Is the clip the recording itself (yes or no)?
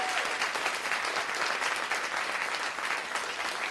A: yes